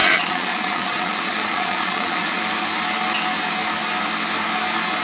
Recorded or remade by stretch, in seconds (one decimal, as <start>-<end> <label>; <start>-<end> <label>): 0.0-2.4 remade; 2.4-5.0 recorded